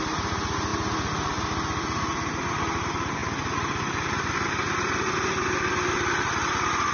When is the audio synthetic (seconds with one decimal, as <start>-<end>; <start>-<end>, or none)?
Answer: none

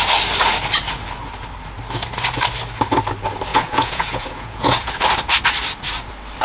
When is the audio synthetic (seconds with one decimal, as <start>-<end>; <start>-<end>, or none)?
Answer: 3.5-4.9

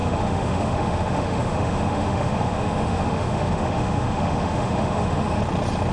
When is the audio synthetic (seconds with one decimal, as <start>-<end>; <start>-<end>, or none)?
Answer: 0.0-5.4

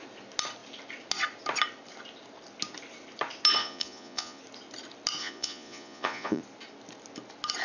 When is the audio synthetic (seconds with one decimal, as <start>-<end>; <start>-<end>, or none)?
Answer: 3.6-4.4; 5.2-6.4